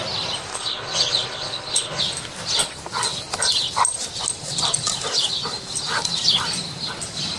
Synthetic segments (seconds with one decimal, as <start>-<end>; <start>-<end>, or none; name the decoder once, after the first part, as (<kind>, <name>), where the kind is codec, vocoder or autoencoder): 0.5-2.0 (codec, HILCodec)